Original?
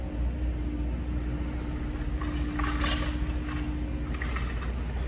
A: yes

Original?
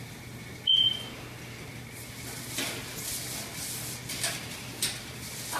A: yes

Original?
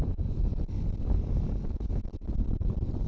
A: yes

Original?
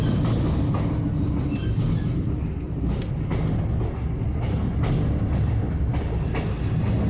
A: yes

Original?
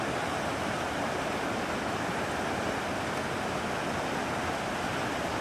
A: yes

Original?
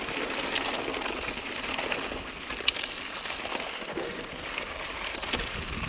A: yes